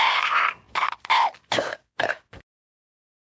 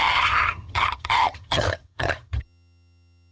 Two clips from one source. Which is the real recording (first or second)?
first